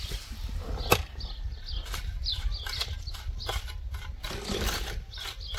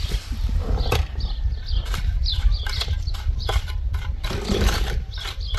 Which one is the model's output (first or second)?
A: second